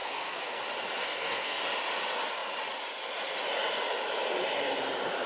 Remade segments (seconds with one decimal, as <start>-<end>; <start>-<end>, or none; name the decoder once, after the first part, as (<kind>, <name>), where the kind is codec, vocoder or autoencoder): 0.0-0.6 (codec, SNAC); 1.0-1.6